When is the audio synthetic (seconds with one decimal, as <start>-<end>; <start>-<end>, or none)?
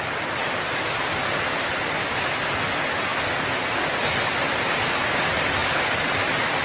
0.0-3.1; 4.6-6.6